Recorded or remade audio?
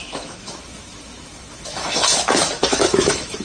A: remade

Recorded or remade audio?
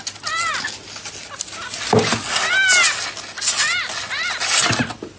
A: recorded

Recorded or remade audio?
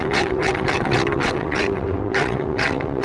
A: remade